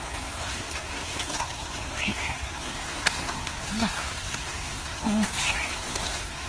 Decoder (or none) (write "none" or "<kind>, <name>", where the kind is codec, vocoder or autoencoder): codec, SNAC